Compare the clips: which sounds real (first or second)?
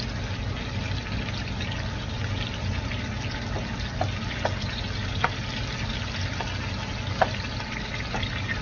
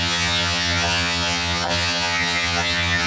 first